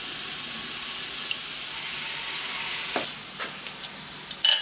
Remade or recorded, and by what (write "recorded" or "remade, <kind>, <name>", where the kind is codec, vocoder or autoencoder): recorded